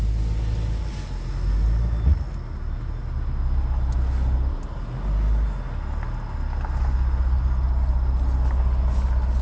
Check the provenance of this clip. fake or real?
real